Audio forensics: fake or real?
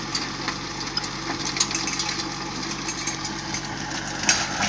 real